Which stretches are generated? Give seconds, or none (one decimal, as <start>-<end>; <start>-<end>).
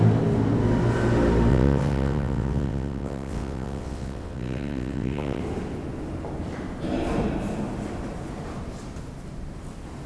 1.5-5.4